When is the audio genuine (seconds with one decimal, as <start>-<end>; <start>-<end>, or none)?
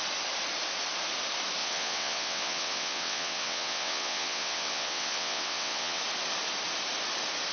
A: 0.0-1.6; 6.0-7.5